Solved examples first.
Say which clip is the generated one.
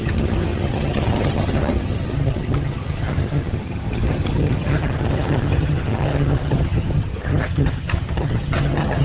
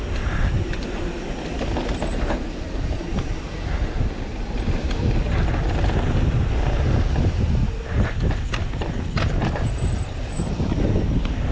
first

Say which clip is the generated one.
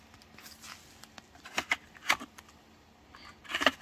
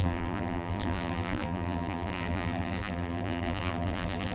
second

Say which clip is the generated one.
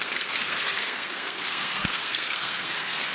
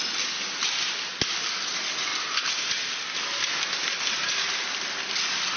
first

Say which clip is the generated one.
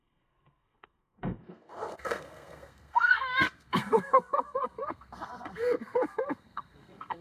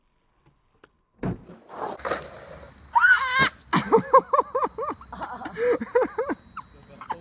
first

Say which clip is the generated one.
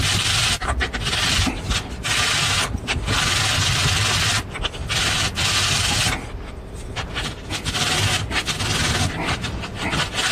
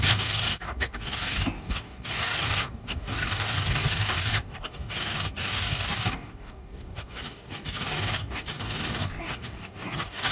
second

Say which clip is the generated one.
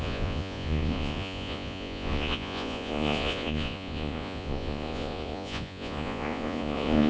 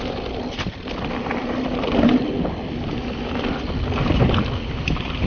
first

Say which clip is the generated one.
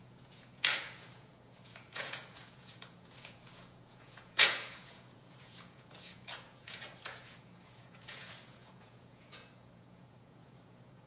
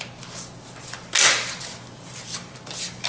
first